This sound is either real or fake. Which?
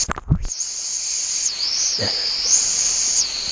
real